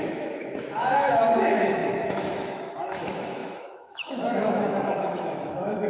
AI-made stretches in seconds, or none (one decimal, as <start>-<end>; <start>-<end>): 0.0-5.9